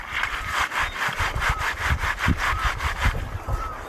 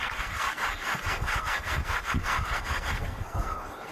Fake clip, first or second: second